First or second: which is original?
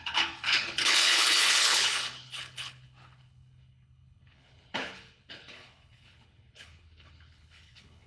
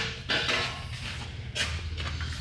second